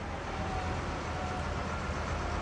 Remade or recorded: recorded